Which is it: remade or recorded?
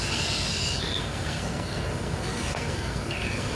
remade